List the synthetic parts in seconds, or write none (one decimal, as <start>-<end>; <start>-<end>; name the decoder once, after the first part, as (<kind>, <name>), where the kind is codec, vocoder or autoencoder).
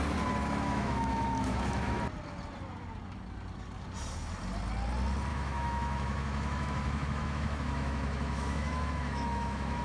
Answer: 0.4-2.0 (autoencoder, DAC-VAE); 5.3-9.8